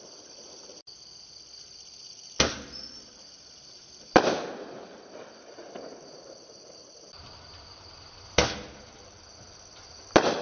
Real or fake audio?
real